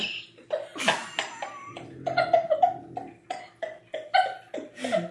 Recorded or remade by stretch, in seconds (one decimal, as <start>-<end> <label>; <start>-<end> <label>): 0.0-5.1 recorded